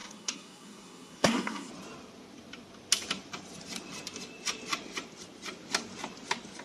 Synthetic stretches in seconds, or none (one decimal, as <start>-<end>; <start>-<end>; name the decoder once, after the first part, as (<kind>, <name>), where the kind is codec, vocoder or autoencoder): 0.0-1.7 (codec, SNAC)